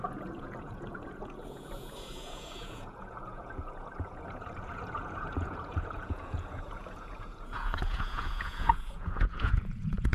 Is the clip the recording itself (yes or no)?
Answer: no